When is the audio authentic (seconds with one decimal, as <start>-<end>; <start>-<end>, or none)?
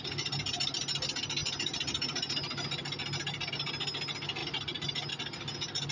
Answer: 0.0-5.9